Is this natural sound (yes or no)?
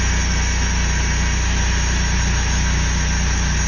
yes